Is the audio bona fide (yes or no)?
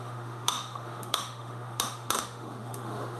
no